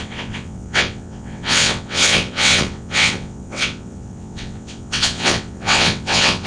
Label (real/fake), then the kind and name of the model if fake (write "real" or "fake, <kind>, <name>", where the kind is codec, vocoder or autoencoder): fake, vocoder, WaveNeXt